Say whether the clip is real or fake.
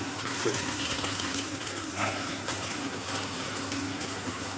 fake